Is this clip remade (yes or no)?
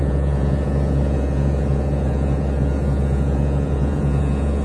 yes